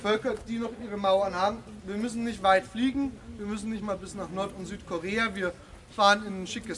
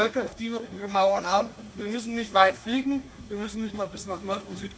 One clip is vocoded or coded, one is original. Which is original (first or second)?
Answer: first